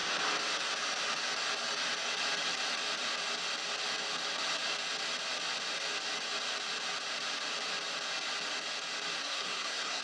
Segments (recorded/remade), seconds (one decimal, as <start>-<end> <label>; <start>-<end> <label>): 0.0-9.2 recorded; 9.2-10.0 remade